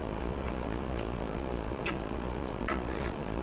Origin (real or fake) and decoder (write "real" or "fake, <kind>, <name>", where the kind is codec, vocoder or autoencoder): fake, vocoder, Vocos